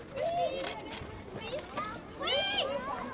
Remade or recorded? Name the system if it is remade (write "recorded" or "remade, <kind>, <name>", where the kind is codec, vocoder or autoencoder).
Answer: recorded